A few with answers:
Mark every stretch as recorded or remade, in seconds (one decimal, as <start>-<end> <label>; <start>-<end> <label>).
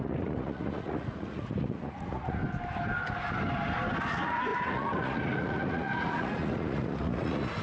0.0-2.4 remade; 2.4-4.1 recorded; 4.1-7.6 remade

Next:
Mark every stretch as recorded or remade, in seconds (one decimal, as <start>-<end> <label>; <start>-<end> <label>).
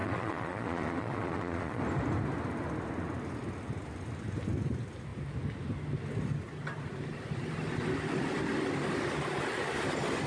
0.0-1.8 remade; 1.8-10.3 recorded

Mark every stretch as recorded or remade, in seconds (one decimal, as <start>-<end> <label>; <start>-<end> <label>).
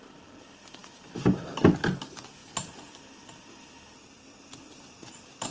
0.0-5.5 recorded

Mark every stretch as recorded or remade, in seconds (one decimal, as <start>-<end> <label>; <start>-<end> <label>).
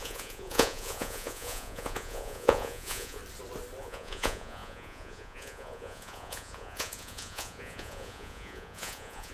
0.0-3.2 remade; 3.2-3.8 recorded; 3.8-9.3 remade